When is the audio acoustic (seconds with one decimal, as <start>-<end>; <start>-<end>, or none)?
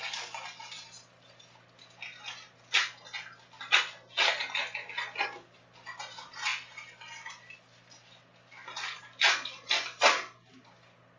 0.0-11.2